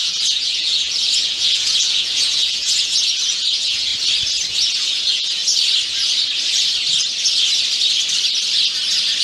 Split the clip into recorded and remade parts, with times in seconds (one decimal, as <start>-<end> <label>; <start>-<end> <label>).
0.0-3.9 remade; 3.9-4.5 recorded; 4.5-5.4 remade; 5.4-9.2 recorded